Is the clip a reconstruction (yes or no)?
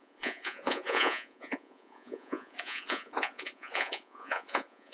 yes